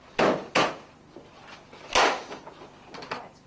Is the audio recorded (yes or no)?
yes